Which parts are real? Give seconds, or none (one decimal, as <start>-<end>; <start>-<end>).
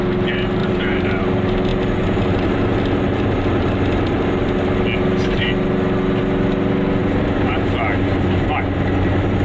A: 0.0-0.6; 1.2-7.0; 7.7-9.4